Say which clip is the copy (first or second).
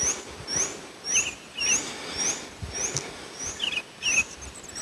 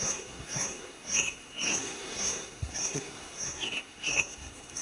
second